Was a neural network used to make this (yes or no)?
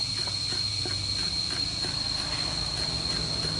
no